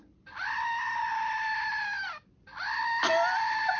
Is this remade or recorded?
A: recorded